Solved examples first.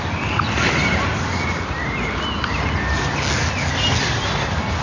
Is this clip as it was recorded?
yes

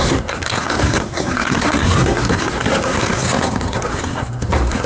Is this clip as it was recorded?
no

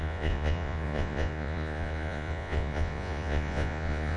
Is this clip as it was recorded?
no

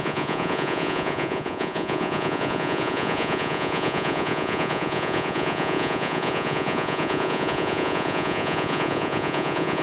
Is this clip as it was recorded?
no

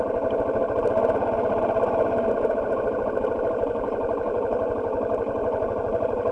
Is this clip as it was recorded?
no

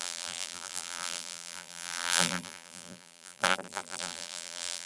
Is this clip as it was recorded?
no